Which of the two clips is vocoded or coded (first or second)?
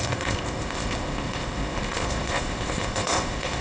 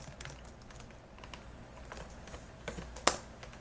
first